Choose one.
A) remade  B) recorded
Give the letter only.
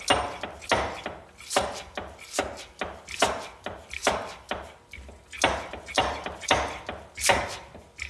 B